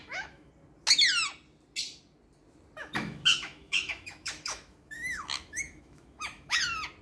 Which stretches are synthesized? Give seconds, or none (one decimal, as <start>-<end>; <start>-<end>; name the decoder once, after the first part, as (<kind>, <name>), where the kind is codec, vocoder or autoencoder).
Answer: 0.0-0.5 (autoencoder, DAC-VAE); 2.8-6.6